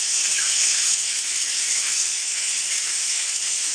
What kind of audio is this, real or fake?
fake